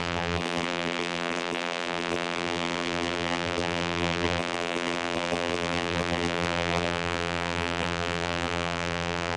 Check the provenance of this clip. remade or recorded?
remade